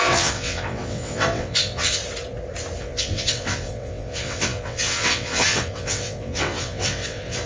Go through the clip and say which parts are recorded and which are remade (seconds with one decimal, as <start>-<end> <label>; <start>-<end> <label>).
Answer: 0.0-2.0 remade; 2.0-2.8 recorded; 2.8-7.5 remade